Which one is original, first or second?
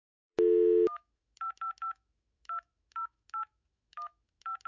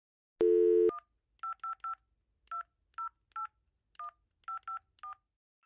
second